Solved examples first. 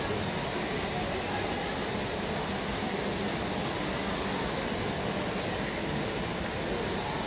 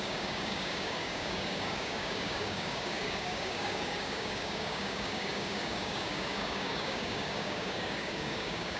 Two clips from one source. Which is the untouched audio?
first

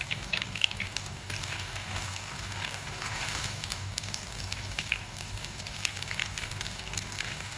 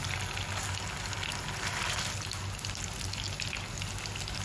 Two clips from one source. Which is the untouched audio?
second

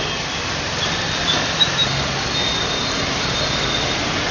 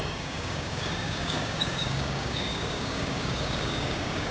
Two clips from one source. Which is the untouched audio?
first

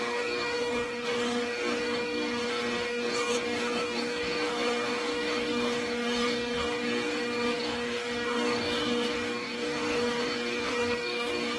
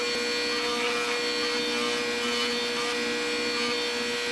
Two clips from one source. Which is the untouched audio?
second